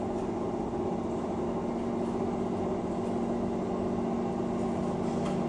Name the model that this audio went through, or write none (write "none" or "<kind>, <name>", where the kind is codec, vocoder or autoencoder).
none